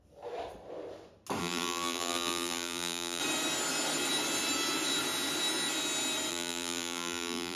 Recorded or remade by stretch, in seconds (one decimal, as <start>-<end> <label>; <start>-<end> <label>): 0.0-1.4 recorded; 1.4-3.2 remade; 3.2-6.3 recorded; 6.3-7.6 remade